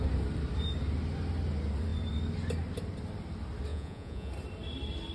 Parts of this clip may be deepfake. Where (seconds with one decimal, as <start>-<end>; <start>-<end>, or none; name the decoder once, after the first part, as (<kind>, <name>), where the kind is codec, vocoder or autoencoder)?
3.7-4.3 (vocoder, Vocos)